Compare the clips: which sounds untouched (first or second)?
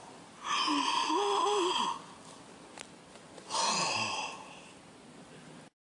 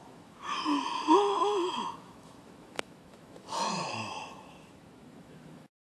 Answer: first